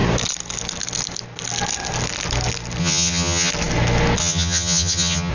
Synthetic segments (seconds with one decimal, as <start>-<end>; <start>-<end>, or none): 2.8-3.5; 4.2-5.3